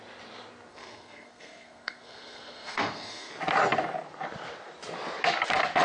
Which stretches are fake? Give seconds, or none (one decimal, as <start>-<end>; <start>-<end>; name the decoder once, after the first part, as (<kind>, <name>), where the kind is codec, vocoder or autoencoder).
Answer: 0.7-3.3 (codec, SNAC)